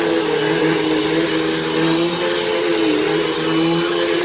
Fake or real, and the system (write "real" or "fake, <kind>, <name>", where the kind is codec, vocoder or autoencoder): real